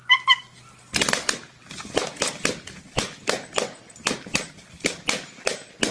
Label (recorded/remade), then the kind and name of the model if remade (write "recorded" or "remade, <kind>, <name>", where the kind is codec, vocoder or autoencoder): recorded